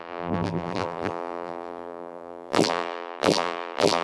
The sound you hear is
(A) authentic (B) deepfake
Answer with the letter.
B